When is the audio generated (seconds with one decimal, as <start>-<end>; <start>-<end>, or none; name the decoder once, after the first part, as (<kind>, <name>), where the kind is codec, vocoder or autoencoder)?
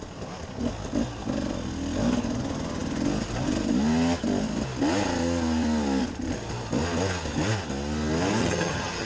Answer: 8.4-9.1 (vocoder, HiFi-GAN)